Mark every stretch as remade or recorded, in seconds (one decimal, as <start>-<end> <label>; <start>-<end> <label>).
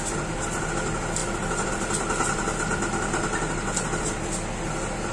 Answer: 0.0-5.1 recorded